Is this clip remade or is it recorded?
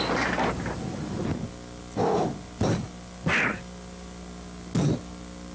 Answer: recorded